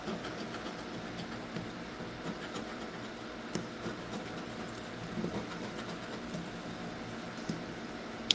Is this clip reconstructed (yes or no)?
no